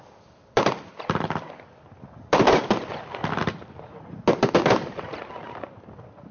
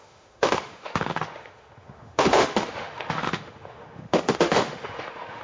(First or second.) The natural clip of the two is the first